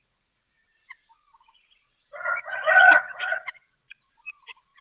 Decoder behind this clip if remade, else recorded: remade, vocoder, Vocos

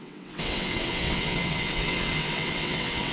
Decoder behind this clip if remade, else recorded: remade, vocoder, WaveNeXt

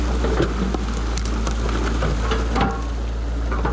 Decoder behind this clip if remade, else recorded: recorded